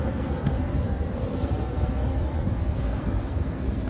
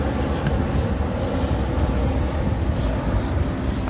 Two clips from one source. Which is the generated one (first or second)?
first